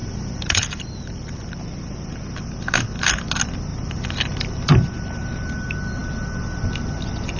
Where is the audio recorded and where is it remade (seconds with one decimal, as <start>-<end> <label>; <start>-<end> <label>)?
0.0-1.6 remade; 1.6-3.7 recorded; 3.7-5.5 remade; 5.5-7.4 recorded